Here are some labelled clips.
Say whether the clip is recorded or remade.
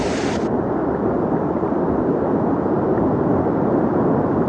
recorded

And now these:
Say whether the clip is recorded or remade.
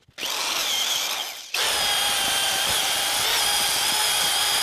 recorded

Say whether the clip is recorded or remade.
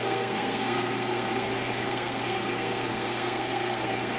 remade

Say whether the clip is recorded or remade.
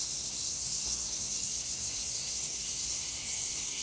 remade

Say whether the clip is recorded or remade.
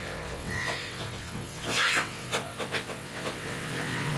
remade